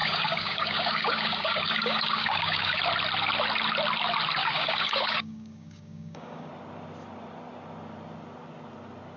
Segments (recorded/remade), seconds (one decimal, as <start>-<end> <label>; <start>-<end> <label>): 0.0-2.8 remade; 2.8-4.4 recorded; 4.4-6.5 remade; 6.5-9.2 recorded